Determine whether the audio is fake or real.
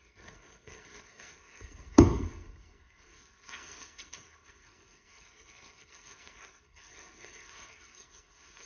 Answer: fake